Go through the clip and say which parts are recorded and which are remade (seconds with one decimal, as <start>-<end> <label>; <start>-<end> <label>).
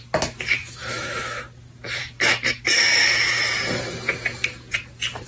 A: 0.0-0.6 recorded; 0.6-1.4 remade; 1.4-2.0 recorded; 2.0-3.4 remade; 3.4-5.3 recorded